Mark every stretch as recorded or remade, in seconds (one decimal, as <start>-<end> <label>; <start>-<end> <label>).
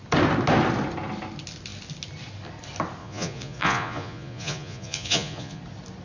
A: 0.0-3.0 recorded; 3.0-5.6 remade; 5.6-6.0 recorded